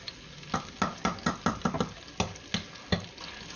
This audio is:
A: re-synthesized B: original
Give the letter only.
B